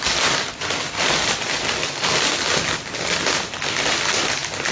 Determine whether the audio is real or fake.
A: real